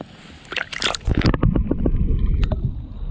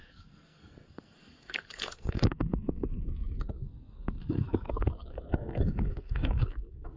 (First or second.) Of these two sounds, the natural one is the first